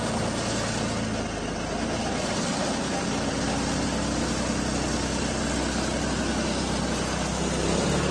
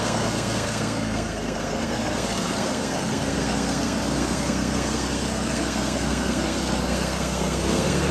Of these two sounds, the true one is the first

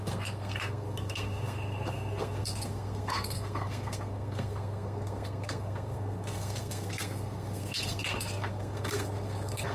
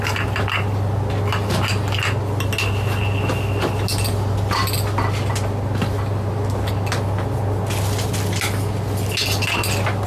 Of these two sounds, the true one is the second